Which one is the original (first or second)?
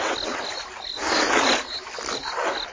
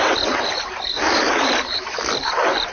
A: first